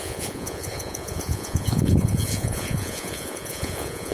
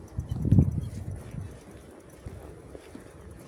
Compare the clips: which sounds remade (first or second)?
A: first